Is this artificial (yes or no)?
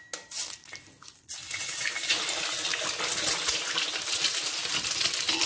no